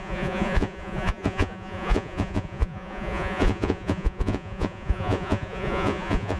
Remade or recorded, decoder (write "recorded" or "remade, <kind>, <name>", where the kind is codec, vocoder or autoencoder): remade, vocoder, Vocos